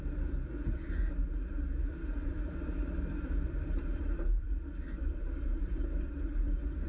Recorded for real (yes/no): no